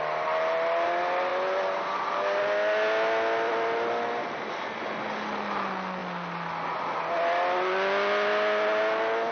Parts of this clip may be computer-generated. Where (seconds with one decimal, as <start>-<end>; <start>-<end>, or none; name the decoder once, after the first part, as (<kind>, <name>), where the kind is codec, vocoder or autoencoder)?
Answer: none